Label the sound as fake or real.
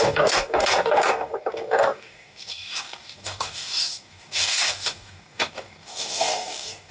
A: fake